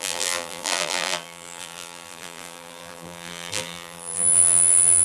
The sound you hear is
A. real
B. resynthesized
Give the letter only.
B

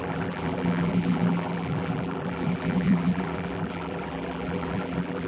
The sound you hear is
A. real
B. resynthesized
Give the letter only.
B